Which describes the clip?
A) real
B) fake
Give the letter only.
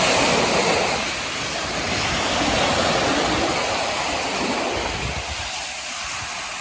A